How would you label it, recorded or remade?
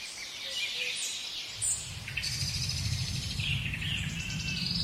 remade